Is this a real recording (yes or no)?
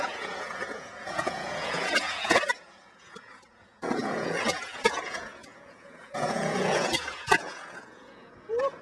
no